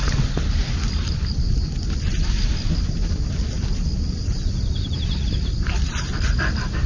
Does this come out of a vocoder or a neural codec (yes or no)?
no